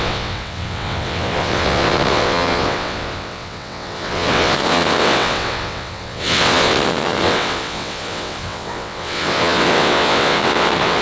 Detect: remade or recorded remade